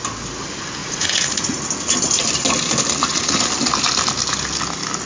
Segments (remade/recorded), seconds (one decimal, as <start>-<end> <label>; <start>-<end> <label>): 0.0-0.8 recorded; 0.8-1.6 remade; 1.6-3.0 recorded; 3.0-3.5 remade; 3.5-5.0 recorded